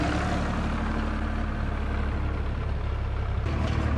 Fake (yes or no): no